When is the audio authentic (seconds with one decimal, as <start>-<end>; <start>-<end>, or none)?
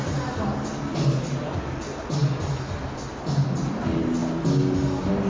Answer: 0.0-5.3